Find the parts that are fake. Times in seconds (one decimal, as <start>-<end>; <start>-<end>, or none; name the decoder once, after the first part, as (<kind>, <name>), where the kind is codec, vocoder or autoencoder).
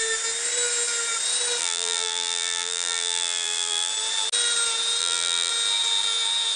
1.6-3.9 (vocoder, BigVGAN v2); 5.0-5.5